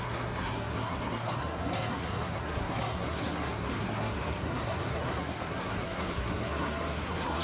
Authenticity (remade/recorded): remade